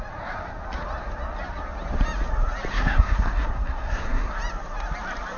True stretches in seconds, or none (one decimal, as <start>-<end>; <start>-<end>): 0.0-2.7; 4.3-5.4